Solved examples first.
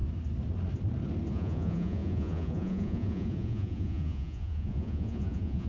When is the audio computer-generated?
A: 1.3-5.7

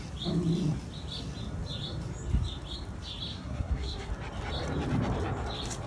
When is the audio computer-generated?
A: 3.3-4.1

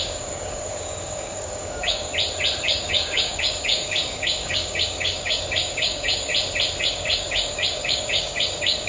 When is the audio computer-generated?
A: 0.0-2.1; 2.6-6.3; 6.8-8.9